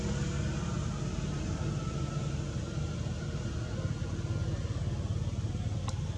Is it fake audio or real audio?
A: real